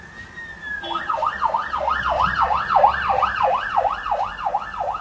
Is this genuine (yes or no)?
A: yes